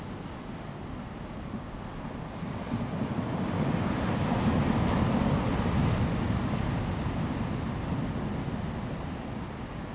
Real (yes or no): yes